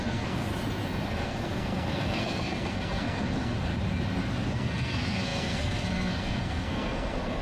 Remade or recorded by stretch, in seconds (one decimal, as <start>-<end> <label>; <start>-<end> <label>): 0.0-0.5 remade; 0.5-1.1 recorded; 1.1-3.7 remade; 3.7-4.5 recorded; 4.5-7.4 remade